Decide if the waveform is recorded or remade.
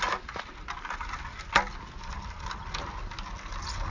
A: recorded